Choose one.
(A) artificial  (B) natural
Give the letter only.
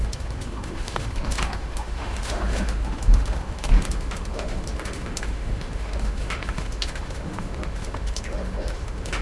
A